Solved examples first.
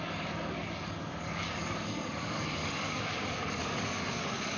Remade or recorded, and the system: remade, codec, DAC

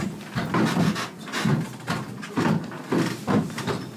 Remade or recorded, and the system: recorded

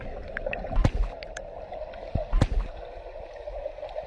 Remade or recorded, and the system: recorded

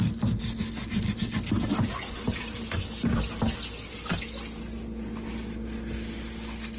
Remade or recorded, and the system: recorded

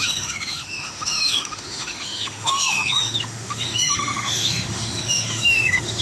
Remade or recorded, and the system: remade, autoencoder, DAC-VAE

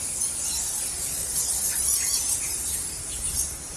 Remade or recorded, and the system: recorded